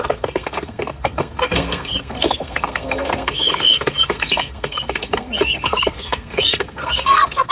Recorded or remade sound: remade